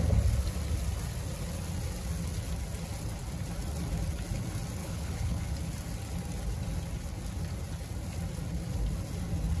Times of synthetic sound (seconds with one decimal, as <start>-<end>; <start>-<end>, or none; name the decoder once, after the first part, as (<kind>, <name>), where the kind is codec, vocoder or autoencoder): 4.8-5.4 (codec, HILCodec)